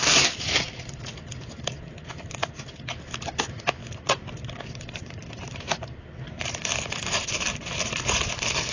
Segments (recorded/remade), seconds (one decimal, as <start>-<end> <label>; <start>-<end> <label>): 0.0-8.7 remade